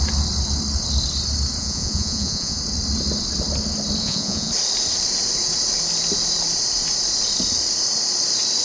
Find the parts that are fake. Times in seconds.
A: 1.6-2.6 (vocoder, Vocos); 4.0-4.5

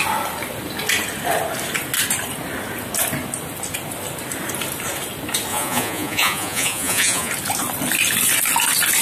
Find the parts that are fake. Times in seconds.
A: 5.5-7.3 (vocoder, Vocos)

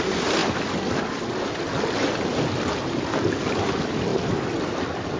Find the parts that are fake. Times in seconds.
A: none

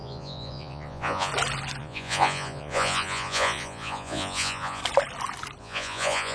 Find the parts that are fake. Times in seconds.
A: 0.0-1.3 (vocoder, Vocos); 1.8-4.8; 5.6-6.3

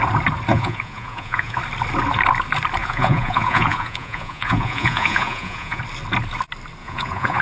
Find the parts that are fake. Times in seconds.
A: 0.5-1.6 (vocoder, Vocos); 2.8-5.8; 6.8-7.4